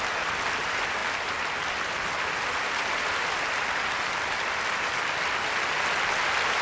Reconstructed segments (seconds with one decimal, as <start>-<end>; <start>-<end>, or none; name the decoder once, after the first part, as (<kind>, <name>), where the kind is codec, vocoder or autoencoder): none